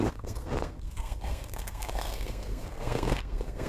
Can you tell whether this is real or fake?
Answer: fake